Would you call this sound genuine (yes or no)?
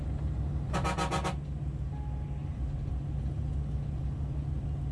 yes